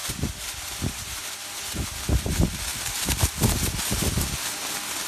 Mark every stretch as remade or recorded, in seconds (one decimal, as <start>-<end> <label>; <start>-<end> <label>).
0.0-1.8 remade; 1.8-5.1 recorded